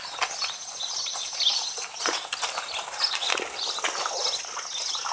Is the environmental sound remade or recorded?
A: recorded